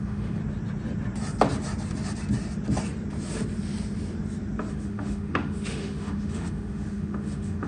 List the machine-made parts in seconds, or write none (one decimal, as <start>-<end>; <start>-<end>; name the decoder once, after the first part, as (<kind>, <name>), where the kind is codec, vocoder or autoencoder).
0.0-0.4 (autoencoder, DAC-VAE); 4.7-7.7